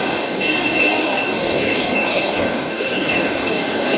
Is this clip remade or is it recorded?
remade